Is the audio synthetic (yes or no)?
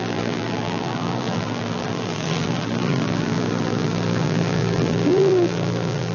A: yes